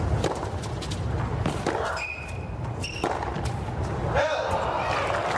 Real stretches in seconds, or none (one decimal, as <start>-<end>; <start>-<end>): 0.0-1.3; 4.5-5.4